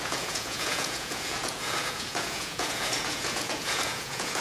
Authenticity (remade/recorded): remade